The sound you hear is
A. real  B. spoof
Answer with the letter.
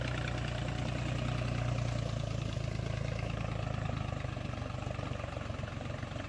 A